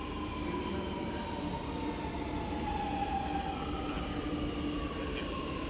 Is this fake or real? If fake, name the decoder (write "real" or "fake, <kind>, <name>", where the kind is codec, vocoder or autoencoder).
real